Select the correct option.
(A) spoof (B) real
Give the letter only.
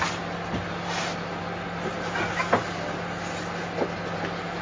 B